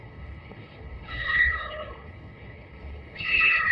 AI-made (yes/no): yes